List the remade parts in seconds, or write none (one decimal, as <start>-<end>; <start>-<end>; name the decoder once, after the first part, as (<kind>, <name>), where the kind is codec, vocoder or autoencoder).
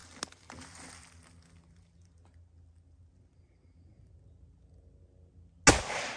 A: none